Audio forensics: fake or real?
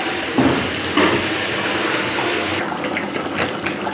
real